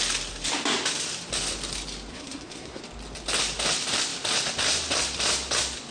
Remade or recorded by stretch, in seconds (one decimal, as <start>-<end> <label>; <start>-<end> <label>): 0.0-2.1 recorded; 2.1-2.8 remade; 2.8-5.9 recorded